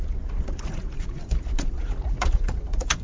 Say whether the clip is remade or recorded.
remade